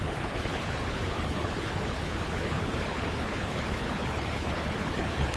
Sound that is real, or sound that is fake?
fake